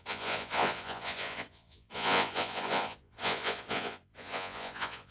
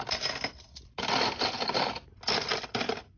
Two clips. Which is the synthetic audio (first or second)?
first